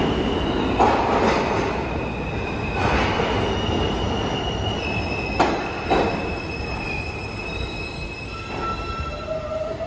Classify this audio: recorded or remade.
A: recorded